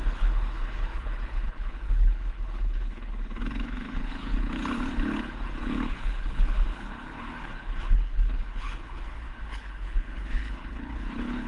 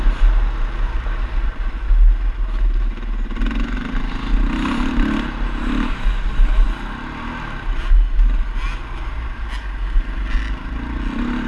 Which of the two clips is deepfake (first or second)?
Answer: first